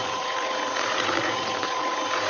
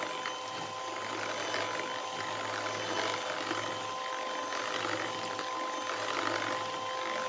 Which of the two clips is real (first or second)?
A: second